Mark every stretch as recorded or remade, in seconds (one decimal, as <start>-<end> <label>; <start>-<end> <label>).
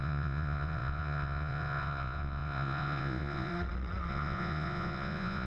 0.0-3.5 remade; 3.5-4.1 recorded; 4.1-5.5 remade